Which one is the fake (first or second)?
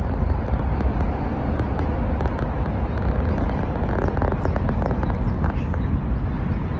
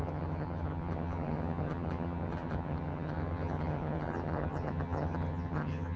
second